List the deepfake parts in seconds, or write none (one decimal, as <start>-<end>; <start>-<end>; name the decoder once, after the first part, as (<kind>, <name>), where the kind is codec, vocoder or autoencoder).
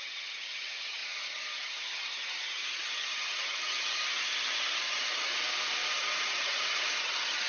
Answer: 0.0-5.3 (vocoder, HiFi-GAN); 5.9-7.5